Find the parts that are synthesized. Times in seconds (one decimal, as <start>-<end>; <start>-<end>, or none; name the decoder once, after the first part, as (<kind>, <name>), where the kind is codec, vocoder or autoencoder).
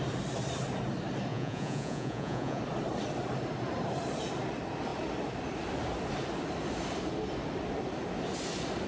1.3-2.6 (vocoder, Vocos)